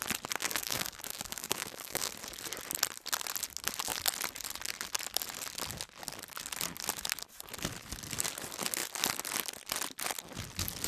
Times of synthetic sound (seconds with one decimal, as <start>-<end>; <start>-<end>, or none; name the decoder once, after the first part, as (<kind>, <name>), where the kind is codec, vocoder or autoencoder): 0.4-2.1 (codec, DAC)